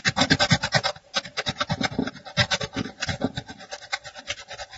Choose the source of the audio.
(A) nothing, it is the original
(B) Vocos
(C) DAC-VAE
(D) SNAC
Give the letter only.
A